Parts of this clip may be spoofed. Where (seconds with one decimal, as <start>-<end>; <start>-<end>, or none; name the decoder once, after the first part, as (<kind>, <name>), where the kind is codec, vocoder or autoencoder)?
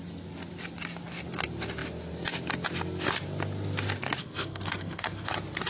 4.2-5.3 (codec, SNAC)